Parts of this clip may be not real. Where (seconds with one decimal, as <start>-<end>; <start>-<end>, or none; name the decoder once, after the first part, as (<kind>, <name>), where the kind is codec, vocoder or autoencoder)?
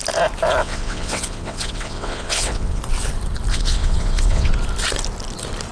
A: 0.6-2.8 (vocoder, WaveNeXt); 3.5-4.5